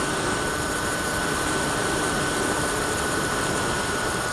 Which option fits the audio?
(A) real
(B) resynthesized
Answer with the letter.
B